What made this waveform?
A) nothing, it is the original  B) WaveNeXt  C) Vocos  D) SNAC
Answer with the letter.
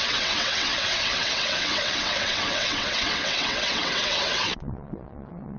B